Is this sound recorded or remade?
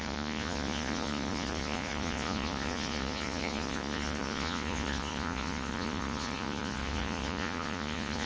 remade